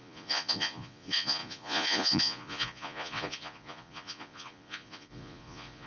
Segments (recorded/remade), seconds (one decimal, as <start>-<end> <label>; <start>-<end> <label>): 0.0-5.9 remade